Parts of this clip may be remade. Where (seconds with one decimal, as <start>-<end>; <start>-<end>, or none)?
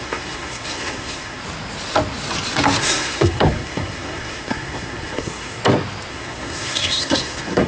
0.0-1.4; 2.8-5.6; 6.1-7.7